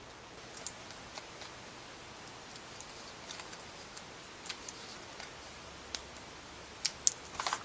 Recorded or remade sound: recorded